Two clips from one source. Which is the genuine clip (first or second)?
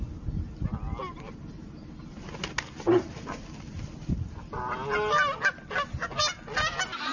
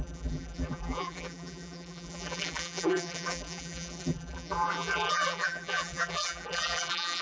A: first